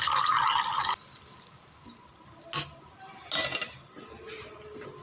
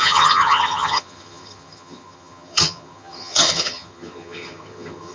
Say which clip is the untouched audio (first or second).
first